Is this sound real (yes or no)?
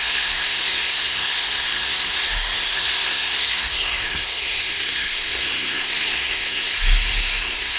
no